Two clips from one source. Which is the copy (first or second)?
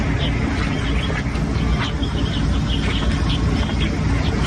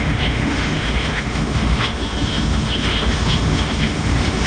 second